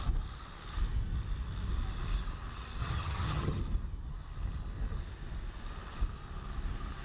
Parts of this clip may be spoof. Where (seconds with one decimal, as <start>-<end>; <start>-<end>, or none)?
2.8-3.6